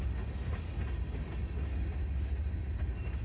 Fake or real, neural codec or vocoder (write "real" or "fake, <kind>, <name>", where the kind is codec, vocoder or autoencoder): real